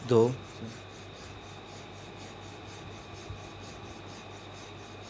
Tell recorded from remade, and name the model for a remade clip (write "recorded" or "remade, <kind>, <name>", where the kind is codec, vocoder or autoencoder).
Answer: recorded